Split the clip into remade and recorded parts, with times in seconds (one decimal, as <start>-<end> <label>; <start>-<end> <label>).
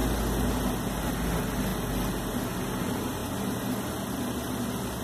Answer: 0.0-1.7 recorded; 1.7-2.3 remade; 2.3-5.0 recorded